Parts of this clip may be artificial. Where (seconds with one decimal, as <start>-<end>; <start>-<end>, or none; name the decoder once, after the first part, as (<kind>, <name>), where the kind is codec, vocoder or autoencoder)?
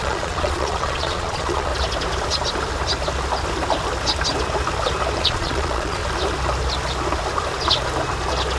0.0-1.7 (vocoder, Vocos); 5.2-6.0